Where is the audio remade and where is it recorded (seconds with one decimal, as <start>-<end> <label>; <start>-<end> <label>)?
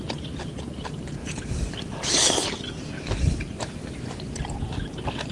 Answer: 0.0-1.2 recorded; 1.2-4.4 remade; 4.4-5.3 recorded